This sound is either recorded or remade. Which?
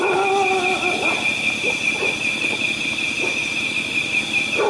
recorded